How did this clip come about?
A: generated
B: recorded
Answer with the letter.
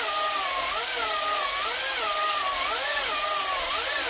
B